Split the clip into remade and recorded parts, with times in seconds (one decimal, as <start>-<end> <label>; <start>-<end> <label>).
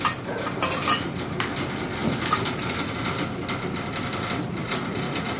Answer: 0.0-4.6 recorded; 4.6-5.4 remade